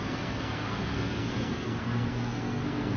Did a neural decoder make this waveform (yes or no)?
yes